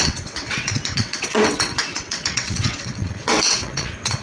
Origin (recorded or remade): remade